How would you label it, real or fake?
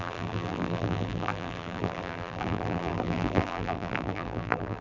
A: fake